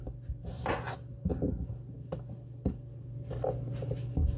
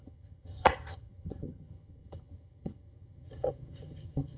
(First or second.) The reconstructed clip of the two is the second